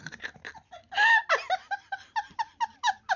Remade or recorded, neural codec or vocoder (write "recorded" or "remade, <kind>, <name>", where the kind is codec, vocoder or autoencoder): recorded